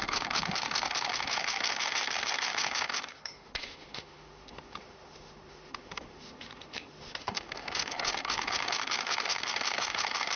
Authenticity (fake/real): fake